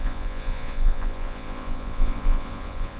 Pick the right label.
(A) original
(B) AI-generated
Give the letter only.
B